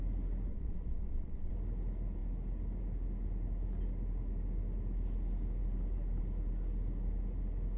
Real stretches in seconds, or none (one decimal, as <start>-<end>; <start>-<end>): 0.0-0.5; 1.5-7.8